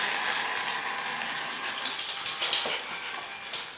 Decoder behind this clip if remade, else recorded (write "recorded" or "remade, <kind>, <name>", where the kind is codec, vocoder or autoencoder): recorded